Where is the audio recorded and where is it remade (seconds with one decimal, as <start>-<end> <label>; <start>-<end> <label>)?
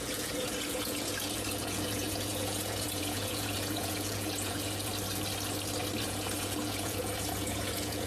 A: 0.0-4.9 remade; 4.9-6.0 recorded; 6.0-8.1 remade